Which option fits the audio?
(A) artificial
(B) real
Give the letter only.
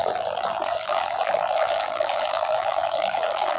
A